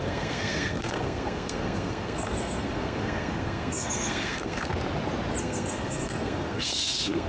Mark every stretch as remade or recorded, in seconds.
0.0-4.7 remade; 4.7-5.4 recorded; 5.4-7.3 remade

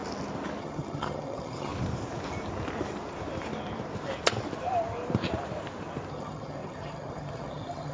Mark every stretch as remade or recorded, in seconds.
0.0-0.6 recorded; 0.6-1.7 remade; 1.7-6.1 recorded; 6.1-7.9 remade

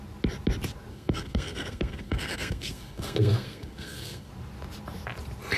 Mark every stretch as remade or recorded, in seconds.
0.0-0.9 recorded; 0.9-4.3 remade; 4.3-5.6 recorded

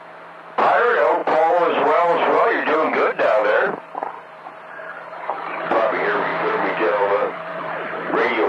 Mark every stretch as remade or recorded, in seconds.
0.0-1.2 recorded; 1.2-4.5 remade; 4.5-6.3 recorded; 6.3-8.5 remade

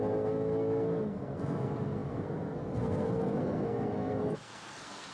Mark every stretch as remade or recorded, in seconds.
0.0-5.1 remade

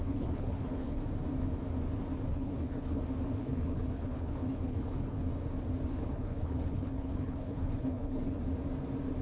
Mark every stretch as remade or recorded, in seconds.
0.0-1.0 remade; 1.0-2.3 recorded; 2.3-3.0 remade; 3.0-3.4 recorded; 3.4-5.3 remade; 5.3-5.9 recorded; 5.9-8.4 remade; 8.4-9.2 recorded